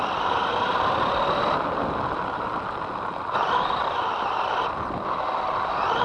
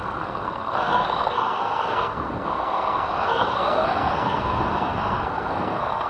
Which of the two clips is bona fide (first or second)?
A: first